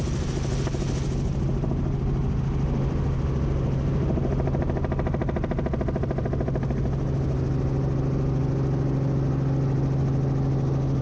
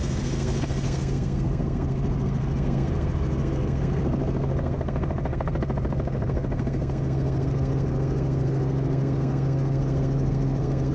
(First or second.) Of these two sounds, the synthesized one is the second